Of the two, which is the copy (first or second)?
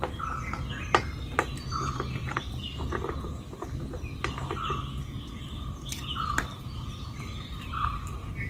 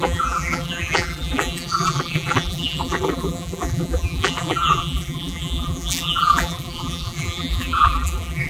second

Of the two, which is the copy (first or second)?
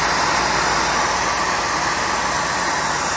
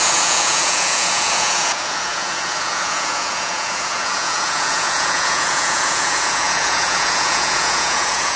second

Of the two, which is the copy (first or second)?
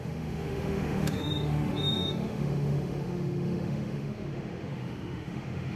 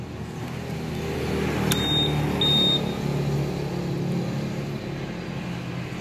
first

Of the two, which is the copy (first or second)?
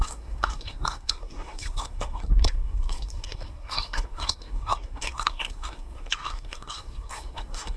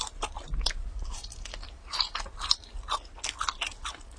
first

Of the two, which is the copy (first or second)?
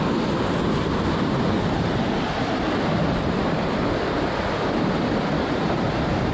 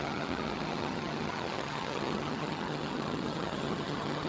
second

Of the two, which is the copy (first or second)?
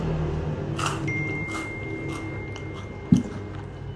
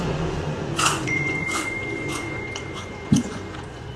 second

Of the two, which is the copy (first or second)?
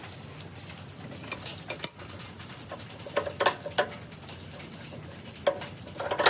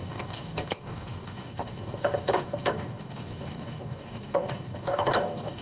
second